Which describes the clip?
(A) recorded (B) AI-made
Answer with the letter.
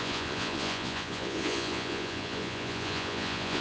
B